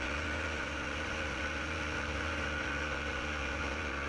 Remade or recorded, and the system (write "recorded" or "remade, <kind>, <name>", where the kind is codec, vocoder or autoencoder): remade, vocoder, Vocos